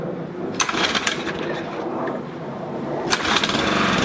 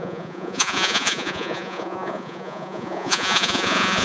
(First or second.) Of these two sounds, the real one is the first